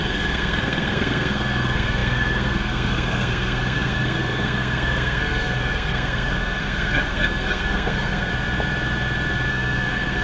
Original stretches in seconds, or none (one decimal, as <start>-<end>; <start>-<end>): 8.3-9.5